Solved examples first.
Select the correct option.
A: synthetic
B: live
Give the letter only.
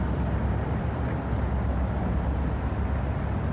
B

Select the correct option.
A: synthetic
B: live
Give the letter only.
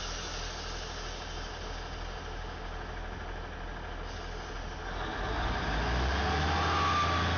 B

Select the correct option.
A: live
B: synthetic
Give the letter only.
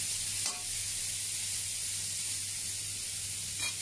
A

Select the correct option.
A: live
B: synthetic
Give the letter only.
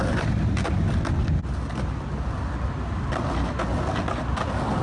A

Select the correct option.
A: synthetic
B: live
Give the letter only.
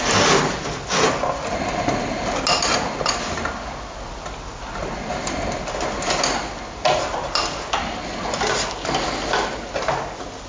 B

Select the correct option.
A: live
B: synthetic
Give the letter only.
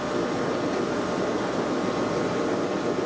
A